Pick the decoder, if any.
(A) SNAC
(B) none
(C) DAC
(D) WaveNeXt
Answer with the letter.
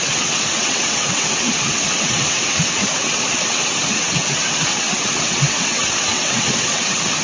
D